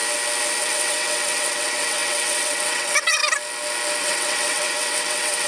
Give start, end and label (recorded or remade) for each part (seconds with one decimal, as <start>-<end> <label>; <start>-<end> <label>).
0.0-0.6 recorded; 0.6-3.2 remade; 3.2-4.0 recorded; 4.0-5.5 remade